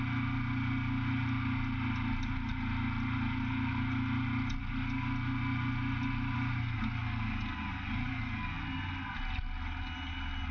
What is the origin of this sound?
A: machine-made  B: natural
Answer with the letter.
B